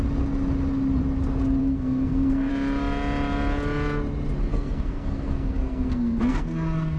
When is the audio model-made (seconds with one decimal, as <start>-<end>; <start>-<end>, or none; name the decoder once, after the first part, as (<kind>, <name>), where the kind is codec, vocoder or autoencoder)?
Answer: 1.6-2.5 (codec, SNAC); 4.5-7.0